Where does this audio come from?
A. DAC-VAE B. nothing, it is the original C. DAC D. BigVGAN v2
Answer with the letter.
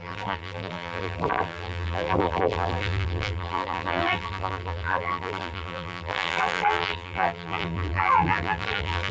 D